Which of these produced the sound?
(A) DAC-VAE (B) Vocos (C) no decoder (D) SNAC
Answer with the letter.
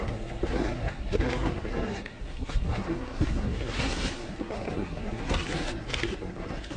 D